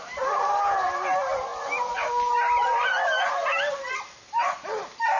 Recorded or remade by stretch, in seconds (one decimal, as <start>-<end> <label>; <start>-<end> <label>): 0.0-5.2 recorded